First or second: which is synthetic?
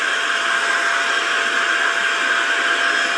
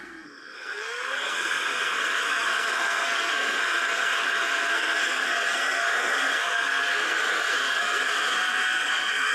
second